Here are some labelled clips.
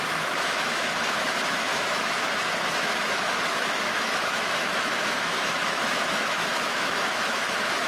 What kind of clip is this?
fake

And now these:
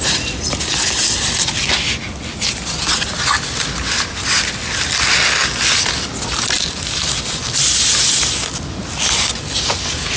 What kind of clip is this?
real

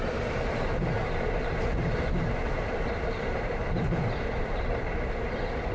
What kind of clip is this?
fake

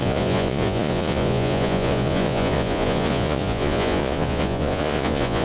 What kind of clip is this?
fake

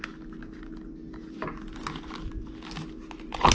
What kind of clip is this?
real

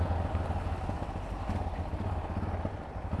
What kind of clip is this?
real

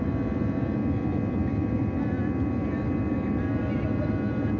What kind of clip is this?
real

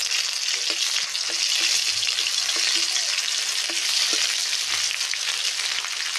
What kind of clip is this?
real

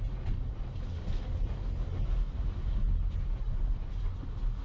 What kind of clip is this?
real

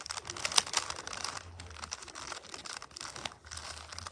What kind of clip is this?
real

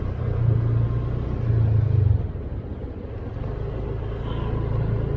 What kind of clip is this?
real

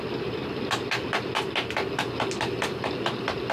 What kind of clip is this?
real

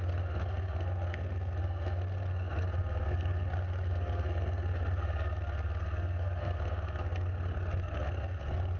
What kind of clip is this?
fake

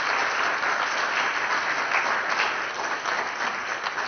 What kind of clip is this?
real